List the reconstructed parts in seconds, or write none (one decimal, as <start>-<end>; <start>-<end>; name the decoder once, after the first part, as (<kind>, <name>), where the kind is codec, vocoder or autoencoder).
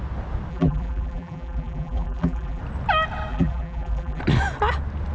0.5-2.6 (vocoder, BigVGAN v2); 3.3-4.2